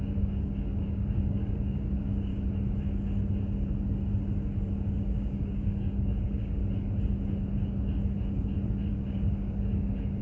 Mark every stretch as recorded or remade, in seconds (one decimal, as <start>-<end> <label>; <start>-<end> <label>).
0.0-2.3 remade; 2.3-5.0 recorded; 5.0-6.6 remade; 6.6-8.9 recorded; 8.9-10.2 remade